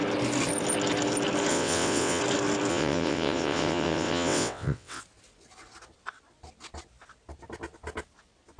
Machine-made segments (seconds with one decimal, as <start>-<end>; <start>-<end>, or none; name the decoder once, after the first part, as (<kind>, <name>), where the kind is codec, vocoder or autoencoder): 1.5-2.2 (vocoder, WaveNeXt); 2.7-5.0